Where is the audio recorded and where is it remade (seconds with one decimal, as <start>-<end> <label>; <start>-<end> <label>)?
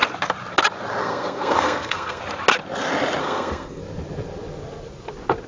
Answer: 0.0-1.0 recorded; 1.0-2.2 remade; 2.2-3.2 recorded; 3.2-3.8 remade; 3.8-5.5 recorded